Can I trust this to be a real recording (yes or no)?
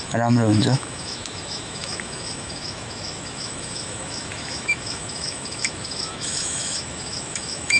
no